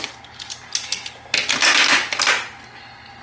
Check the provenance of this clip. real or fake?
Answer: real